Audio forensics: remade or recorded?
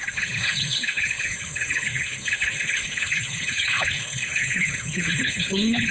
remade